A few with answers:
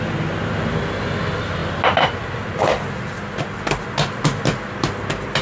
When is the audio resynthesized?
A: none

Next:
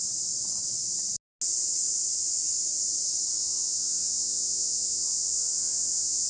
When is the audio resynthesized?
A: 3.4-6.3 (vocoder, Vocos)